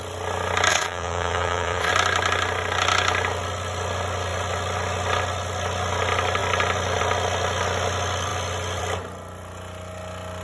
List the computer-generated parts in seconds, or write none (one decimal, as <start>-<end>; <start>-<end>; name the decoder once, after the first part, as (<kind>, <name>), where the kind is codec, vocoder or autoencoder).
0.7-1.9 (vocoder, Vocos)